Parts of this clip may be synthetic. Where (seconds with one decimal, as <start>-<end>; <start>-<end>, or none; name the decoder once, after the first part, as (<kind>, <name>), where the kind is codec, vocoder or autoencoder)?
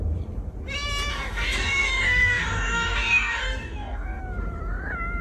1.1-4.2 (codec, DAC)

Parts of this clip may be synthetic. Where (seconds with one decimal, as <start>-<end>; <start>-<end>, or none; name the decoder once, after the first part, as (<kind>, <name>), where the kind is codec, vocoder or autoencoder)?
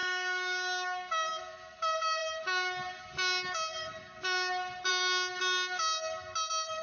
0.0-1.4 (codec, DAC)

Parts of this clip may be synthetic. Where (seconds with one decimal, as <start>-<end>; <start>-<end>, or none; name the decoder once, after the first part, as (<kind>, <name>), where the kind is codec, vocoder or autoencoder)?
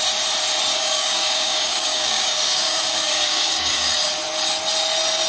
0.7-3.9 (codec, DAC)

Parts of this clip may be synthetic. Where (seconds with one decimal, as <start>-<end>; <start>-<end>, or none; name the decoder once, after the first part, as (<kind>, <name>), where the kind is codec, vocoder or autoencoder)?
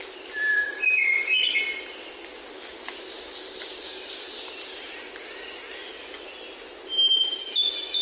0.5-1.6 (codec, DAC)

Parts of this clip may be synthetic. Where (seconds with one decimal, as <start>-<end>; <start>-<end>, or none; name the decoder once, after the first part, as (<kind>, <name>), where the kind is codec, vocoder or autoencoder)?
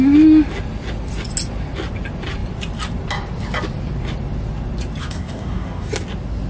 5.0-5.9 (codec, DAC)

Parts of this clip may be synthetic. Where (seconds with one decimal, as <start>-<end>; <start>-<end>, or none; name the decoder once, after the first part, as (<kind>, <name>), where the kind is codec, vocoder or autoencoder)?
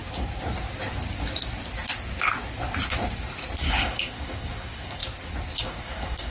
3.6-5.0 (codec, DAC); 5.6-6.3